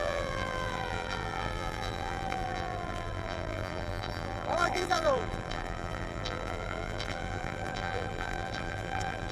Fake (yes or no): yes